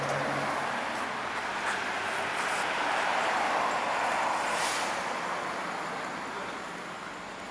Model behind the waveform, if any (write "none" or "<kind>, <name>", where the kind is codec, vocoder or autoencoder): none